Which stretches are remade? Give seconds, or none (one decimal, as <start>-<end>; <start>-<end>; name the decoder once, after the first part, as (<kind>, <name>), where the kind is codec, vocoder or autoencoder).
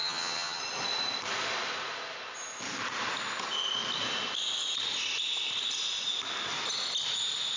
0.0-0.6 (vocoder, HiFi-GAN)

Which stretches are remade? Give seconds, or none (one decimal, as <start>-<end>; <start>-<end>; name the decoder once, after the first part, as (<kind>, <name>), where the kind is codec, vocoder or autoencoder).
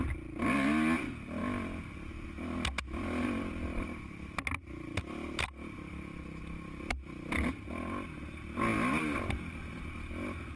none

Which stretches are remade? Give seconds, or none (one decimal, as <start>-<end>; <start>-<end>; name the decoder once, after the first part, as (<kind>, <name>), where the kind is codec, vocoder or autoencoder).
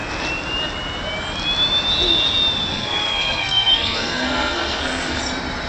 2.7-5.2 (codec, SNAC)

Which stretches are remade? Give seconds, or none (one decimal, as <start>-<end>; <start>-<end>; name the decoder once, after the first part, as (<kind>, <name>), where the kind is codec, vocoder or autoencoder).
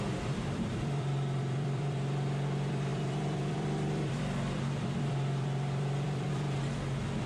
0.0-7.3 (vocoder, BigVGAN v2)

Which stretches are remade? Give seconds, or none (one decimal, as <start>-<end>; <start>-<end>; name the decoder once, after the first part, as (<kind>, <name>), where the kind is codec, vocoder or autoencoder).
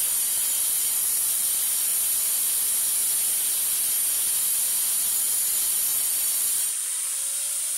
0.0-1.9 (vocoder, BigVGAN v2); 5.1-7.8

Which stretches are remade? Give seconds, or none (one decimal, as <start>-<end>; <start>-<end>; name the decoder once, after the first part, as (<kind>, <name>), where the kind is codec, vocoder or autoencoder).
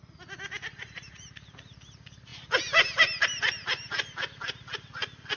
none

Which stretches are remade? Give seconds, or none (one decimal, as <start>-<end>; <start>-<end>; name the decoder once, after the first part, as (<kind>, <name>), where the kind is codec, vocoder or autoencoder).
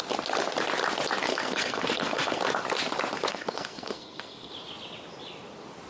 1.2-2.4 (codec, SNAC); 3.3-4.5